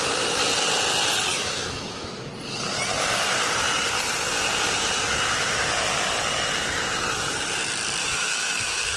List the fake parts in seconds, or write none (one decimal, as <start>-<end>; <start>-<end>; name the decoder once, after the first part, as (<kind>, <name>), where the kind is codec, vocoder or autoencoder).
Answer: 1.3-2.3 (autoencoder, DAC-VAE); 8.0-9.0